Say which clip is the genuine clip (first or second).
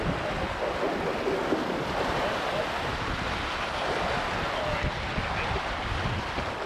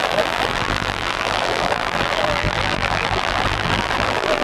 first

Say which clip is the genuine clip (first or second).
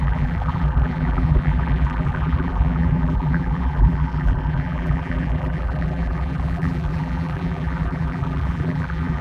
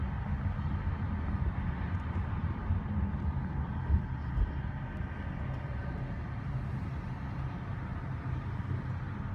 second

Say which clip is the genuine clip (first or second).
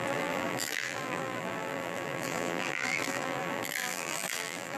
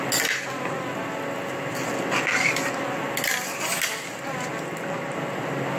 second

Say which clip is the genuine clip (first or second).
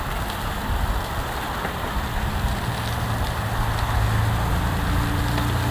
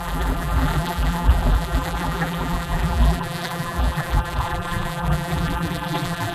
first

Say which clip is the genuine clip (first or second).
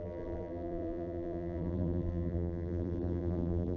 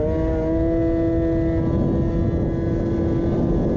second